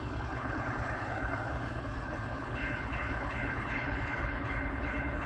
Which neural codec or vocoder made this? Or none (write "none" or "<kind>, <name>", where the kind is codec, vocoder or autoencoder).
codec, HILCodec